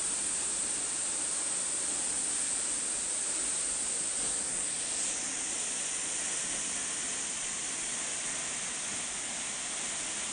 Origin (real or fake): real